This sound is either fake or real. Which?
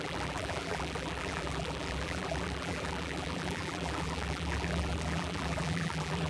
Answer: fake